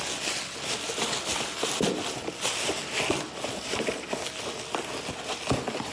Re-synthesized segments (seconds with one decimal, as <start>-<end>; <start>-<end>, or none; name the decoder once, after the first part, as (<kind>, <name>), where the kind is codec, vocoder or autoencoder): none